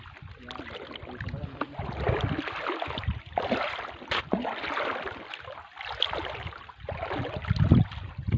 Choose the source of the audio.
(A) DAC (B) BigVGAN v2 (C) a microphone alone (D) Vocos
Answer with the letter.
C